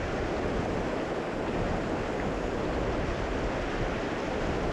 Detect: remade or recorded recorded